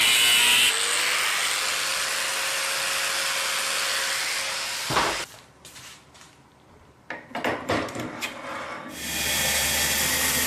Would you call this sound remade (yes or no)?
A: no